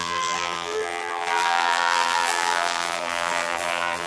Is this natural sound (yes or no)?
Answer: no